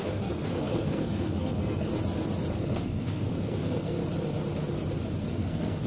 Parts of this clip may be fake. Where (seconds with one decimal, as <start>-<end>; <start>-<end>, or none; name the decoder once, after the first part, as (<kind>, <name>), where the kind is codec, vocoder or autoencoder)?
0.0-1.9 (codec, SNAC); 2.5-4.0; 5.2-5.9